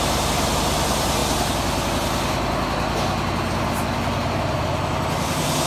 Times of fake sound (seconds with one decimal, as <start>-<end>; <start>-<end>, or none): none